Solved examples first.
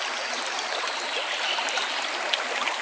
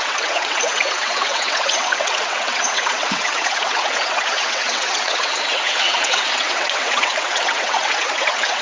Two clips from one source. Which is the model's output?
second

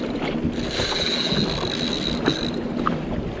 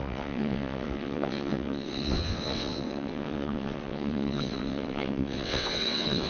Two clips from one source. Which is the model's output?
second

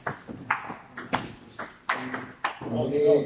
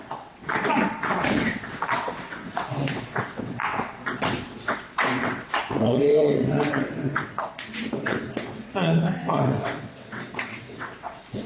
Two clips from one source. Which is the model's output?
second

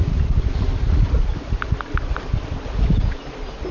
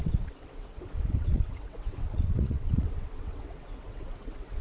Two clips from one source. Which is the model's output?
second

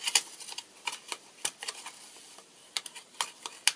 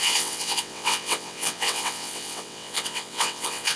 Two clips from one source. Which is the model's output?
second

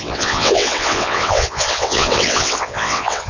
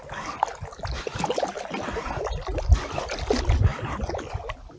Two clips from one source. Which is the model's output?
first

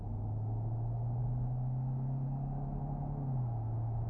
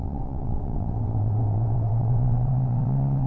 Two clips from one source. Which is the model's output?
second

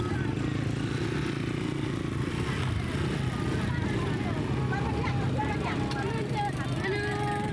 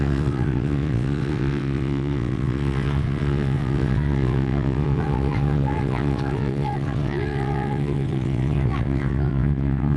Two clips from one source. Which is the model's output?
second